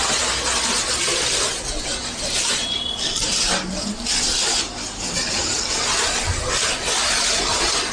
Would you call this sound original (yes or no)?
yes